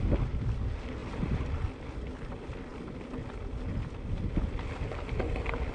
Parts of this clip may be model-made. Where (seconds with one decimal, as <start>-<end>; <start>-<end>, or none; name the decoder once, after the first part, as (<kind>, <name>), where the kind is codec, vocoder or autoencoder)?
1.0-1.7 (vocoder, BigVGAN v2)